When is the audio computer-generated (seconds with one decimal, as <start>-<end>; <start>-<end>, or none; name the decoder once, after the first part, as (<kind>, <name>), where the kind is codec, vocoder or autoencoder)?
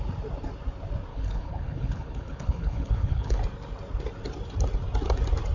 1.1-3.4 (codec, HILCodec)